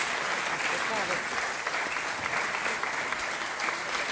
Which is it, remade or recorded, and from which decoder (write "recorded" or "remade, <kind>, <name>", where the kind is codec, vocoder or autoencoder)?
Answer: recorded